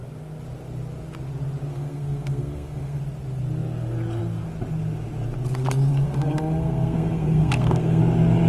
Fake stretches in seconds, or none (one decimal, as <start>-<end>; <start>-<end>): 1.7-3.0; 5.9-8.0